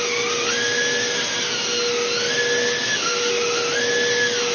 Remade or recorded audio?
recorded